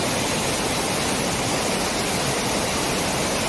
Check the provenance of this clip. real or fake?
real